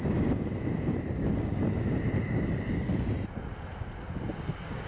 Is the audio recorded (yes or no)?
yes